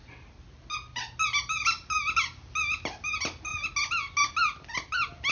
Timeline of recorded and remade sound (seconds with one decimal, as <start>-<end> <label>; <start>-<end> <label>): 0.0-5.3 recorded